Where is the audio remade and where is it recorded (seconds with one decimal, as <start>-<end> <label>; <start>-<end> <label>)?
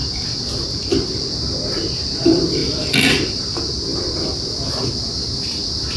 0.0-6.0 recorded